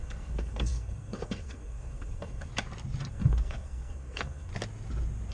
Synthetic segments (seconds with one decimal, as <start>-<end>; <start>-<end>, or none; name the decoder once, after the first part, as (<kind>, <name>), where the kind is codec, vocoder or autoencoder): 0.0-2.5 (codec, SNAC); 3.1-4.5

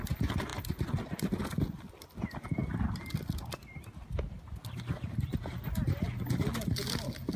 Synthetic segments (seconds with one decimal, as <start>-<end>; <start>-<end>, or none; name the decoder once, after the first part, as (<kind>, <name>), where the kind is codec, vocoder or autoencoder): none

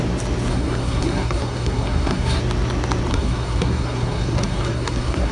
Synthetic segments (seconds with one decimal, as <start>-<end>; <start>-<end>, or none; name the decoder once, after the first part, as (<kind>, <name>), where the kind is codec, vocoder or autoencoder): 0.5-2.4 (codec, SNAC); 3.1-5.3

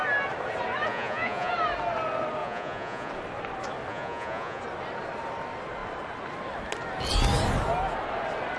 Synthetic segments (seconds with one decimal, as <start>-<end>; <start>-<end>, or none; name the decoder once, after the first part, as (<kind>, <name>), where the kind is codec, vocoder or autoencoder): 0.9-1.5 (vocoder, Vocos); 2.4-3.1; 3.9-4.6

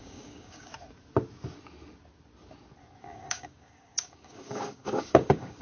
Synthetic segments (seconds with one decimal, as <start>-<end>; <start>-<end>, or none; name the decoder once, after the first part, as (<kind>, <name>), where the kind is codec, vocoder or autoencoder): 0.0-0.7 (codec, DAC); 3.0-5.6

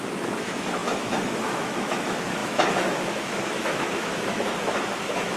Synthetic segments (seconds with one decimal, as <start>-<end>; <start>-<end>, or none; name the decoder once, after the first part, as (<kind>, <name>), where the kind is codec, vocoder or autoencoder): 0.0-5.4 (autoencoder, DAC-VAE)

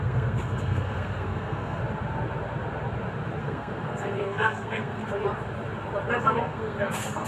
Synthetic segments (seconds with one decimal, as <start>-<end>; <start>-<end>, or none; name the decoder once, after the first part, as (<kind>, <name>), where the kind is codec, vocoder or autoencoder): 0.0-1.8 (codec, SNAC); 3.4-5.0; 6.2-7.3

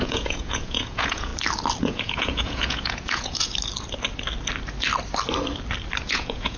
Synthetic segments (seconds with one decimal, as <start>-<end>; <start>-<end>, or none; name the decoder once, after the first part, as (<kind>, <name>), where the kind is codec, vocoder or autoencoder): 0.0-1.3 (vocoder, Vocos); 1.8-3.5; 6.0-6.6